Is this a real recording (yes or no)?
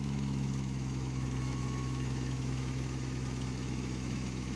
no